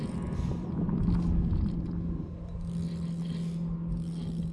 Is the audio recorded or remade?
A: recorded